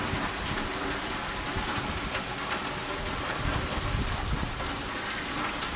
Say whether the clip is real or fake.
real